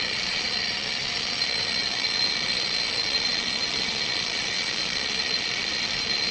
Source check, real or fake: fake